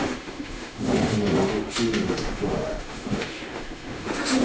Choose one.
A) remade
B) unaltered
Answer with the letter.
A